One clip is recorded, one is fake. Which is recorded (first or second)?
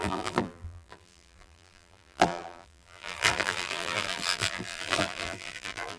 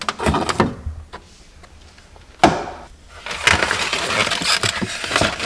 second